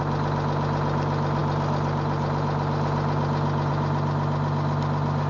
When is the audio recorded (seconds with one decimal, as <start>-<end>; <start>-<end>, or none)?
0.0-5.3